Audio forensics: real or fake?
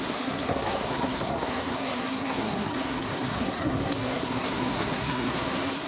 fake